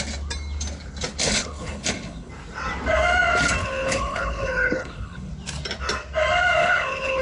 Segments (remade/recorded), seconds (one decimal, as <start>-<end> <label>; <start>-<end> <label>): 0.0-1.2 recorded; 1.2-2.3 remade; 2.3-3.6 recorded; 3.6-5.3 remade; 5.3-6.6 recorded; 6.6-7.2 remade